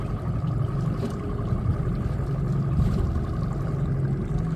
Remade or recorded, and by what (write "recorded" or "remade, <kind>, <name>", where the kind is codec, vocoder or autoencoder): recorded